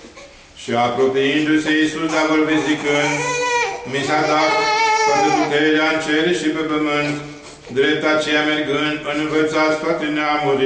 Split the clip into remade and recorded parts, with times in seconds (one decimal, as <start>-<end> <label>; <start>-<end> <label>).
0.0-10.7 recorded